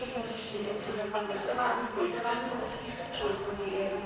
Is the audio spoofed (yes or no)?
yes